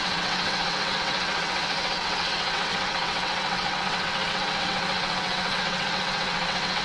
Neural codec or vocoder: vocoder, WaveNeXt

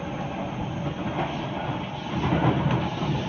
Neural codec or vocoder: none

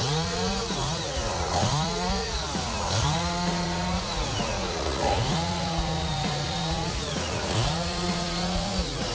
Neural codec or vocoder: vocoder, Vocos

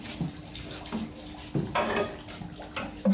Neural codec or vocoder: none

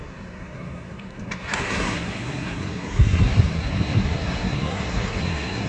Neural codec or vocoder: codec, SNAC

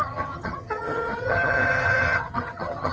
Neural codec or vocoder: vocoder, HiFi-GAN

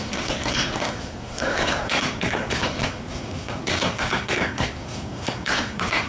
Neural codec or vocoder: codec, SNAC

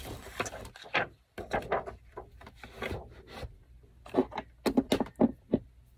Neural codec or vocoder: none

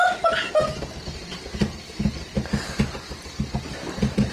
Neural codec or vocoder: vocoder, BigVGAN v2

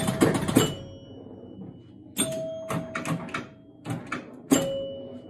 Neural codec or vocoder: none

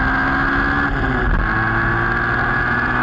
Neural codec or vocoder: none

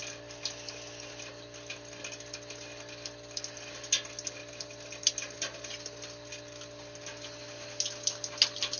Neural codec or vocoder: none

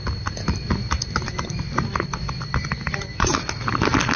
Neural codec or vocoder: none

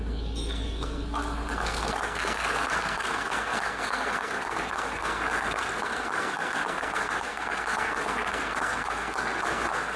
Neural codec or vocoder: codec, SNAC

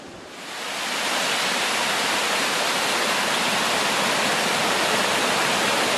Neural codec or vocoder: none